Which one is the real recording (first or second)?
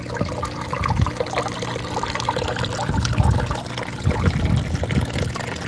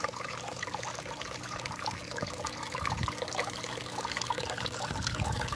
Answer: first